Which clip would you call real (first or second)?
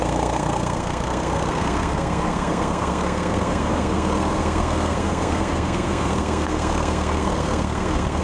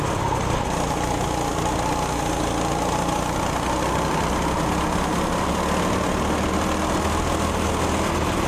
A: second